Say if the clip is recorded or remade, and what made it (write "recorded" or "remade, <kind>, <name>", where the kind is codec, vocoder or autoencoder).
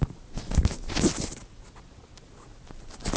recorded